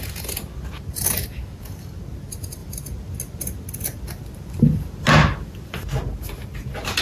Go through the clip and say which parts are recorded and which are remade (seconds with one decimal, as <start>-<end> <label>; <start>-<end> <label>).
0.0-7.0 recorded